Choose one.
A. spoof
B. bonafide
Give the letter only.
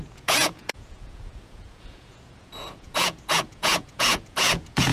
A